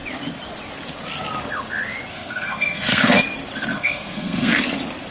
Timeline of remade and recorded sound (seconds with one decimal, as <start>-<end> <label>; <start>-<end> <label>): 0.0-2.1 recorded; 2.1-3.0 remade; 3.0-3.7 recorded; 3.7-4.5 remade; 4.5-5.1 recorded